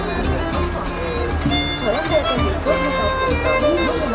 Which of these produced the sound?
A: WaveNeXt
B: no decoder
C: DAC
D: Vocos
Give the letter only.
B